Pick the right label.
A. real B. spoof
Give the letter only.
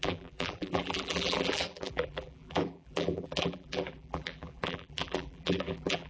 B